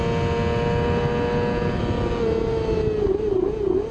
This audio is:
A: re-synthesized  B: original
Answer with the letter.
B